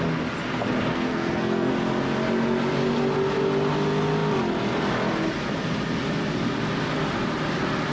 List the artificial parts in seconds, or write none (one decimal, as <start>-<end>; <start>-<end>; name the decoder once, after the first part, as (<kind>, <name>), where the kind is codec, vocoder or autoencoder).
0.9-1.7 (codec, SNAC)